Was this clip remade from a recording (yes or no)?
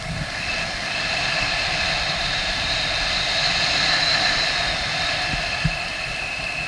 no